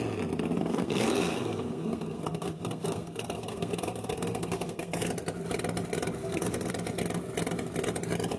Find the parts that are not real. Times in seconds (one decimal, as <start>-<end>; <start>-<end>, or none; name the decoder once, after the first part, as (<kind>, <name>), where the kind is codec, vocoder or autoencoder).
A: 0.6-5.1 (codec, SNAC); 6.2-6.7